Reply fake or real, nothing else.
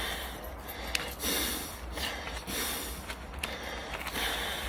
real